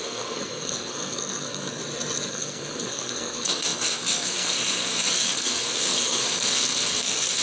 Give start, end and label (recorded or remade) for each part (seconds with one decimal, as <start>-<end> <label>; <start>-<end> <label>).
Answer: 0.0-1.8 remade; 1.8-2.3 recorded; 2.3-7.4 remade